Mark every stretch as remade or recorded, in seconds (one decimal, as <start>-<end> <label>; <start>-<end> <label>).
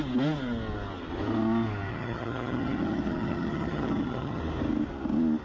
0.0-1.9 recorded; 1.9-4.4 remade; 4.4-5.4 recorded